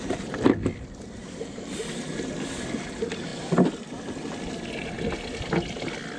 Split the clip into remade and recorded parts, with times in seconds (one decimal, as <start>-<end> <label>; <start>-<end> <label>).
0.0-6.2 recorded